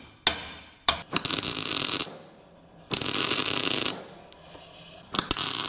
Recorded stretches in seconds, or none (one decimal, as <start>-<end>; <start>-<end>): 0.0-0.4; 1.0-5.7